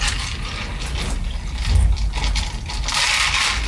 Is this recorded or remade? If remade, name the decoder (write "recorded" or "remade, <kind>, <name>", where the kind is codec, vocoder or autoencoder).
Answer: recorded